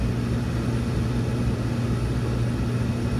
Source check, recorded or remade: recorded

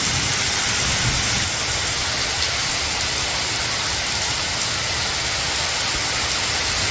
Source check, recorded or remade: recorded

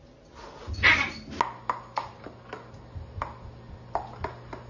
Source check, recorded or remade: recorded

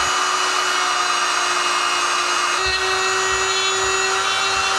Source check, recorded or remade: recorded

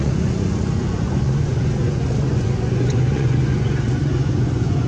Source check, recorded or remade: remade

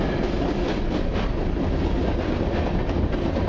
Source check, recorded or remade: recorded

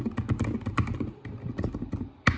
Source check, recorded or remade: recorded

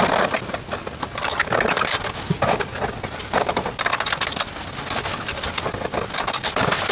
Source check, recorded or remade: recorded